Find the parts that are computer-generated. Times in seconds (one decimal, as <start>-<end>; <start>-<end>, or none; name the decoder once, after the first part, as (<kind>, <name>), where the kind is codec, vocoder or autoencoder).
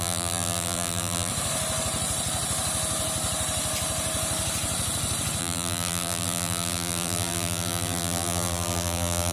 0.0-1.3 (vocoder, BigVGAN v2); 5.4-9.3